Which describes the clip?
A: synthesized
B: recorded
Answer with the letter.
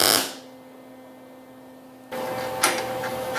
B